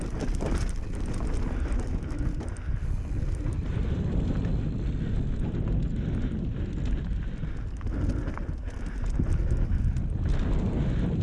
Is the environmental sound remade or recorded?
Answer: recorded